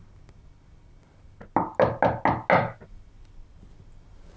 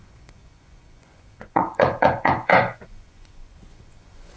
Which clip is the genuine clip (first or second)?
first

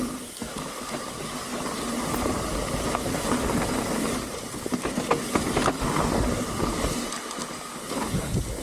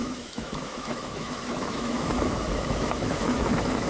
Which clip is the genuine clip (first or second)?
first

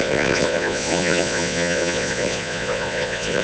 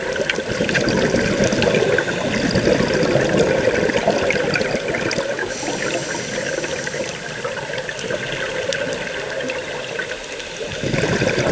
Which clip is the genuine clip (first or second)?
second